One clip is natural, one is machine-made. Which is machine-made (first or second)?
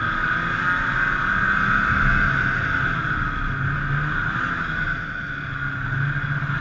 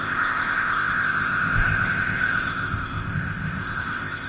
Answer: second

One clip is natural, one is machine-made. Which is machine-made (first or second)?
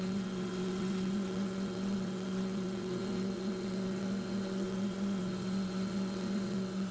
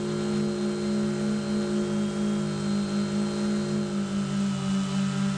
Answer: first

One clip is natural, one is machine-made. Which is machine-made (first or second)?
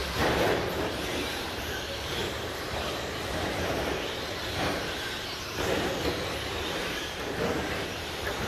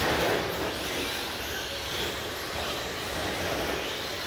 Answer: first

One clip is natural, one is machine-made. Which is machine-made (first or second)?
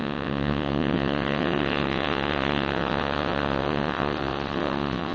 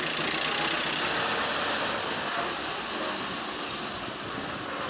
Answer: first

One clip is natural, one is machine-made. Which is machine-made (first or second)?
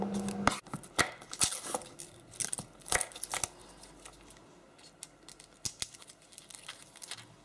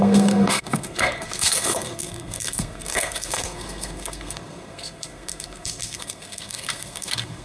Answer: second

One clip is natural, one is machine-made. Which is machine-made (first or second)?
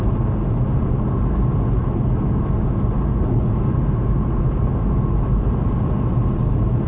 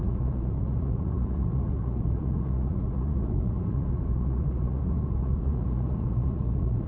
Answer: second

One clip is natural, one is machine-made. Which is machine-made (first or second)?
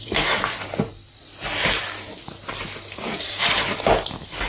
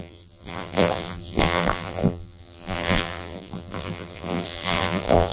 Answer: second